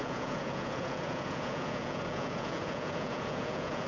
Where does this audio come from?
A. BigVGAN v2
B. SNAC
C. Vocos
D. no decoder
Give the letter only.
C